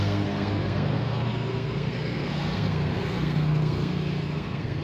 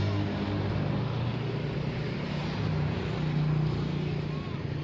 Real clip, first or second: second